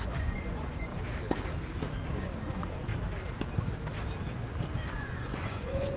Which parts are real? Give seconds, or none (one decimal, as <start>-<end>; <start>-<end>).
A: 0.9-2.1; 2.9-4.9